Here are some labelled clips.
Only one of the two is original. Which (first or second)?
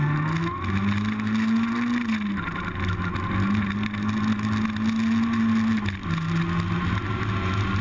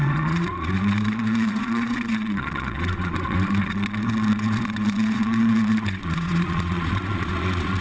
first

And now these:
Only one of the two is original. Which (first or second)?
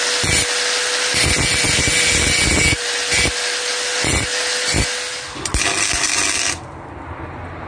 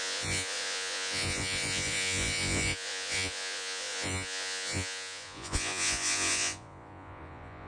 first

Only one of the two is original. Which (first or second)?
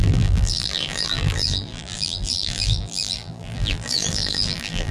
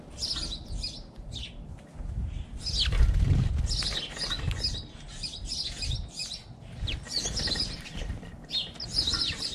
second